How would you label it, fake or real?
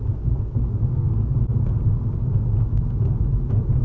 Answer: real